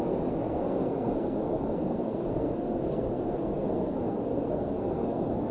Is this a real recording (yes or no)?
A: no